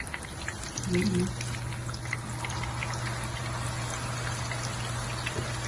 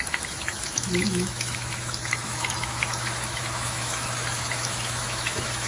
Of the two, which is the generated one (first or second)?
second